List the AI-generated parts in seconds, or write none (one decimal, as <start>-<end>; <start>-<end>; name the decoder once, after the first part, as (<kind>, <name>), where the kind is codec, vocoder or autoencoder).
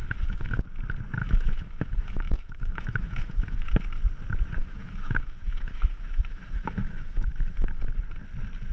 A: 0.0-0.6 (autoencoder, DAC-VAE); 1.2-3.8; 4.6-7.8